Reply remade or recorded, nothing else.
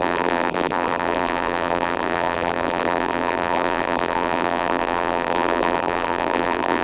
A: remade